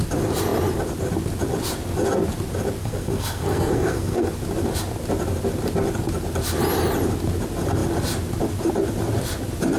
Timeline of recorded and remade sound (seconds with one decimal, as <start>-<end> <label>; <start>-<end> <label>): 0.0-2.8 recorded; 2.8-4.3 remade; 4.3-9.8 recorded